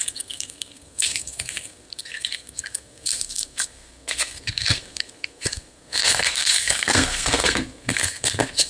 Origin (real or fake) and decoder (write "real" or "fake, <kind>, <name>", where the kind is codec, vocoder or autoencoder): fake, codec, SNAC